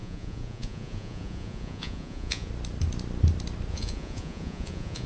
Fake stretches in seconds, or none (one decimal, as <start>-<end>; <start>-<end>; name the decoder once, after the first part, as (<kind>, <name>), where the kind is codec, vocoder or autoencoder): 0.0-2.5 (vocoder, Vocos); 3.7-5.1